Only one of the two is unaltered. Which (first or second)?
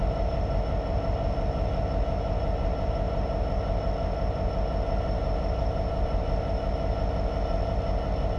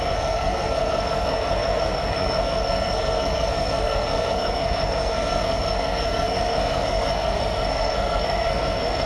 first